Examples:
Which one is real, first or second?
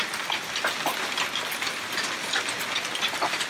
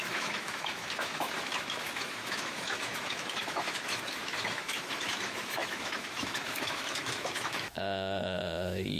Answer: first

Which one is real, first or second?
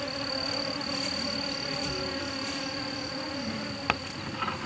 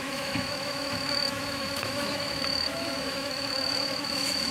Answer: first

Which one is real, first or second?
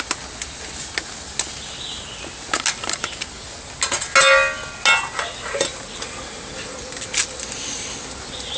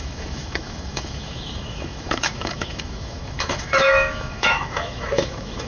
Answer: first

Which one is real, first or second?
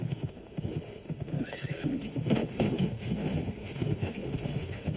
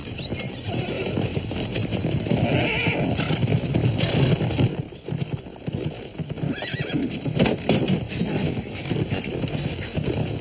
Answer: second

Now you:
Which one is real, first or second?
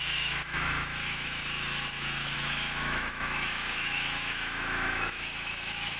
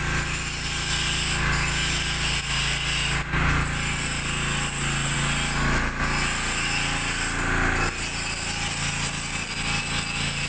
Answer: second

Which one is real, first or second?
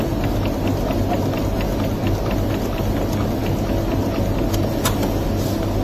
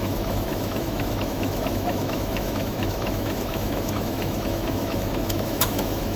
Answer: first